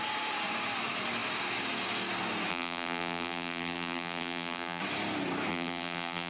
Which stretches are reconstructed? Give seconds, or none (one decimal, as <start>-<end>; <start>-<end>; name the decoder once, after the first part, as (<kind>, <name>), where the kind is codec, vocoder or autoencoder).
2.5-4.8 (vocoder, BigVGAN v2); 5.5-6.3